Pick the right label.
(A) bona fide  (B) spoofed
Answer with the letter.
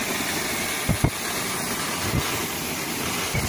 A